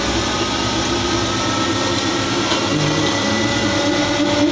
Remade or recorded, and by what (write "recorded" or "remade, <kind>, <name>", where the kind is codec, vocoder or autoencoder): recorded